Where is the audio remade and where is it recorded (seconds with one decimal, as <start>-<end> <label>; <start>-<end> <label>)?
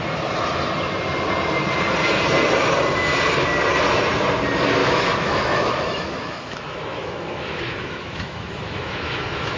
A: 0.0-4.8 recorded; 4.8-9.6 remade